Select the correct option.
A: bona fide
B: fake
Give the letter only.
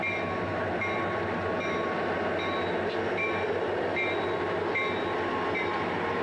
A